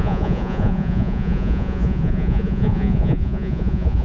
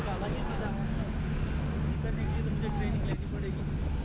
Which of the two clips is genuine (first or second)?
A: second